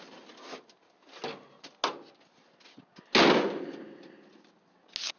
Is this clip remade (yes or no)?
no